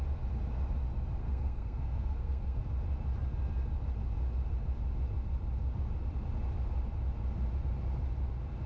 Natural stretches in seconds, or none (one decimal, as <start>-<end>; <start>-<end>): 0.0-1.2; 2.6-8.7

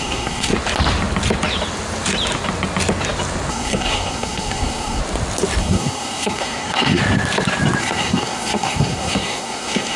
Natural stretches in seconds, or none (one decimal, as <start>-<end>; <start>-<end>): 0.5-3.5; 5.0-5.6; 7.0-7.8